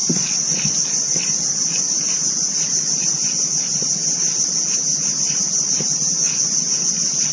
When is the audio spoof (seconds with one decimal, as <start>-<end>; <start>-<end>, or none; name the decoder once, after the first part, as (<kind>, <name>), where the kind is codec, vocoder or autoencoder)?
none